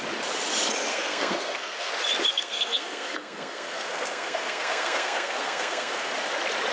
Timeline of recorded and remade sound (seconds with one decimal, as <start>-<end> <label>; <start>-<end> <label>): 0.0-0.9 recorded; 0.9-1.9 remade; 1.9-2.3 recorded; 2.3-6.1 remade; 6.1-6.7 recorded